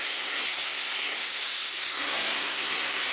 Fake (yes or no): yes